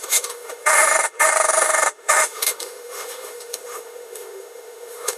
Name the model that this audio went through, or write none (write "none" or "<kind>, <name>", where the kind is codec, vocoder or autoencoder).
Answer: autoencoder, DAC-VAE